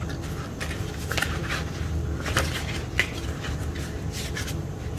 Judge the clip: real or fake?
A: fake